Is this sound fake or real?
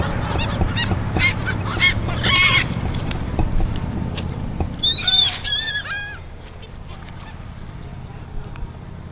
fake